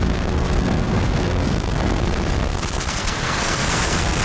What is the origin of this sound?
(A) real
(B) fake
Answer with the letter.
B